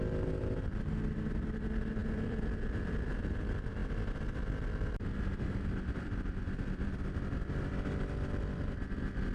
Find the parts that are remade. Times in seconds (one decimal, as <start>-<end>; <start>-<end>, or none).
0.0-3.8; 4.9-9.3